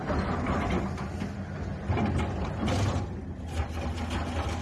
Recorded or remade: recorded